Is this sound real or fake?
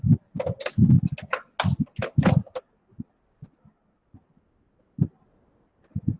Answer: real